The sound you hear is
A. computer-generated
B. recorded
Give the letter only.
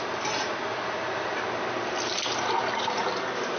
A